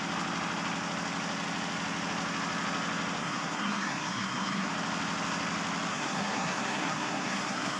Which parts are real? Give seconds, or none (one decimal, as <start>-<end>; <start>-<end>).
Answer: 0.0-3.2; 4.7-5.9